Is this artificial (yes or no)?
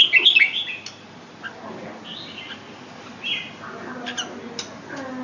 no